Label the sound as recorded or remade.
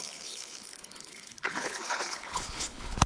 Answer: remade